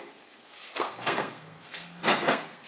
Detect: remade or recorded remade